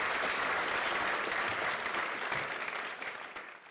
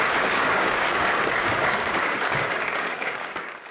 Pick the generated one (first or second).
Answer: second